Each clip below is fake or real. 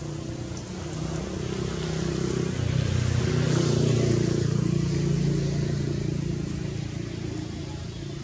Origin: real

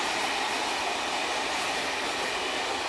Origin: real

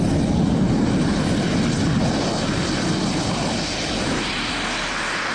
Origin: real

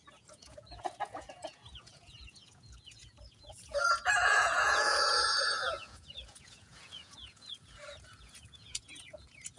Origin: fake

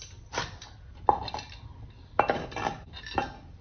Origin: real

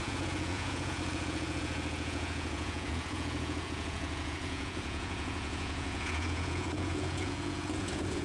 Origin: fake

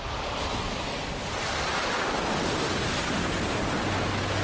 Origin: real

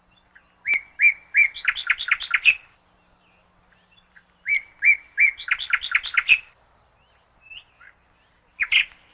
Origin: real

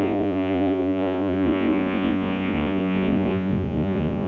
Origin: fake